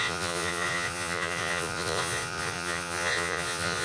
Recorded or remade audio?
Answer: remade